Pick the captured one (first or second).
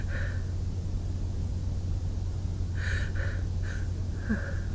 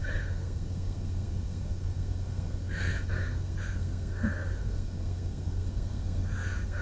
first